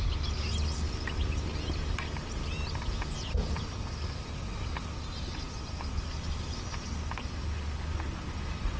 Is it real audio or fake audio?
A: real